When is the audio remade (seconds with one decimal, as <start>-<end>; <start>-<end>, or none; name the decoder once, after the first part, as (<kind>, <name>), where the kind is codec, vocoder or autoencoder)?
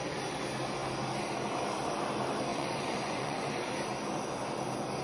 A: 2.5-3.5 (vocoder, Vocos)